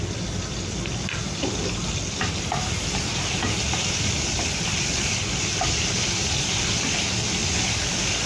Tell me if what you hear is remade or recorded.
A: recorded